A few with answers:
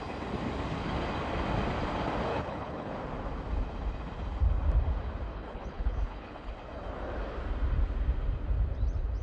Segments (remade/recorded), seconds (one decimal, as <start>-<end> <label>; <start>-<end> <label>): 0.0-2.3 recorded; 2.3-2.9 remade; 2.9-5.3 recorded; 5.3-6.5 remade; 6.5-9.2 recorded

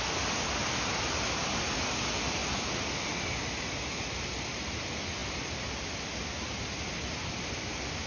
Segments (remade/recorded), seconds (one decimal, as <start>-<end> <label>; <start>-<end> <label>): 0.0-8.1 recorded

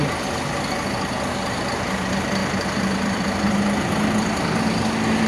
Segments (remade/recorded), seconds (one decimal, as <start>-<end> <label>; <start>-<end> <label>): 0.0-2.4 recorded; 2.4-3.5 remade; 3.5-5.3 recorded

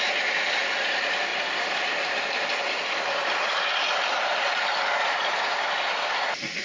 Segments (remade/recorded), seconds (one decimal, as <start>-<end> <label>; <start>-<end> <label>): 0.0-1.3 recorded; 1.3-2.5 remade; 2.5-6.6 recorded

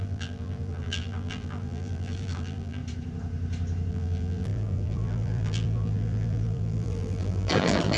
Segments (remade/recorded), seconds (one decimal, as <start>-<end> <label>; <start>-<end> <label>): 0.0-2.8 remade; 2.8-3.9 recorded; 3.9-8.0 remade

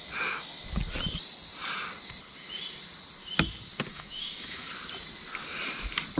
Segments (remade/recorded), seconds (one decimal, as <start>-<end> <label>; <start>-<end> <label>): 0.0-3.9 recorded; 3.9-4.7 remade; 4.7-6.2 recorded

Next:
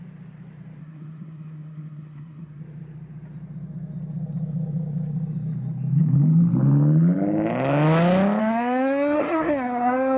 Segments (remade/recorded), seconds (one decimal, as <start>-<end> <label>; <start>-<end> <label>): 0.0-0.8 recorded; 0.8-2.6 remade; 2.6-8.4 recorded; 8.4-10.2 remade

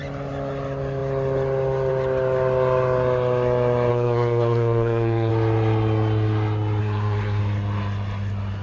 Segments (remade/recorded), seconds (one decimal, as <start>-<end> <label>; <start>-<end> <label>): 0.0-3.9 recorded; 3.9-5.3 remade; 5.3-6.8 recorded; 6.8-7.4 remade; 7.4-8.6 recorded